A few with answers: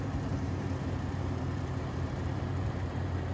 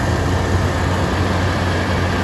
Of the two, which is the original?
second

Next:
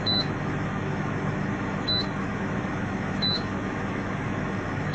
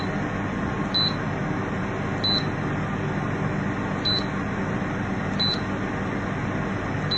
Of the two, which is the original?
second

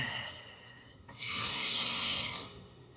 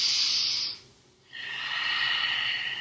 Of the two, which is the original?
second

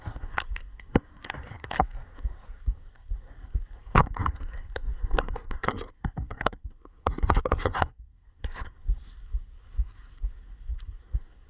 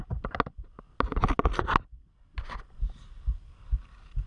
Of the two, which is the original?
second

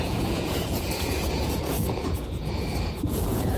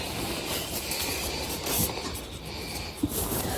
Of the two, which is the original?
second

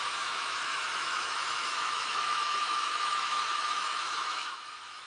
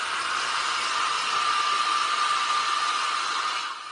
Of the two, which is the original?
second